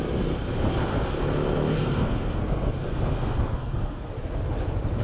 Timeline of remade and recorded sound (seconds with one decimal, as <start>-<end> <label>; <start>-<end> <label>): 0.0-1.8 recorded; 1.8-4.1 remade; 4.1-5.0 recorded

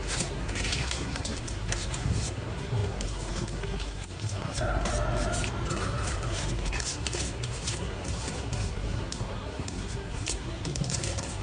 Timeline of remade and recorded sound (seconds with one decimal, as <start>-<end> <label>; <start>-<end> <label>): 0.0-4.9 remade; 4.9-5.7 recorded; 5.7-11.4 remade

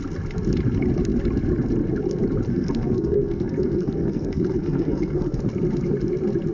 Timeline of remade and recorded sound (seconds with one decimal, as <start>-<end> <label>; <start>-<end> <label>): 0.0-2.5 recorded; 2.5-5.4 remade; 5.4-6.5 recorded

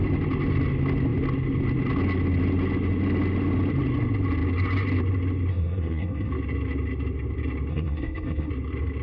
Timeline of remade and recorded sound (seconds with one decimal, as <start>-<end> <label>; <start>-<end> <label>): 0.0-5.5 recorded; 5.5-6.3 remade; 6.3-7.7 recorded; 7.7-8.5 remade; 8.5-9.0 recorded